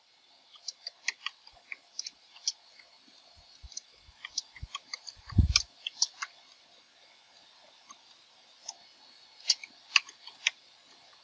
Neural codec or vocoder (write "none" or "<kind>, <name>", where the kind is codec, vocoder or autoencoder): none